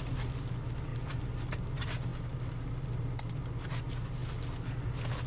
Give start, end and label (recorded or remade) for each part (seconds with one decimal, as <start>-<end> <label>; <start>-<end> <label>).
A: 0.0-5.3 recorded